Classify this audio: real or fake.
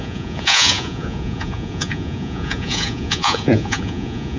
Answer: fake